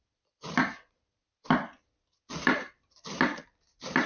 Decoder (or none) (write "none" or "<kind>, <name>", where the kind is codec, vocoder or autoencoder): none